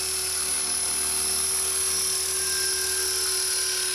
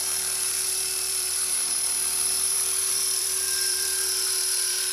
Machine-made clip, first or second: second